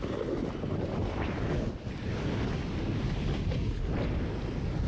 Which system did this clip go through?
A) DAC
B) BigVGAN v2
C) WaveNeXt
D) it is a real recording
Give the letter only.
D